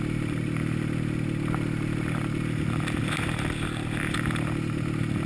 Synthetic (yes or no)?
no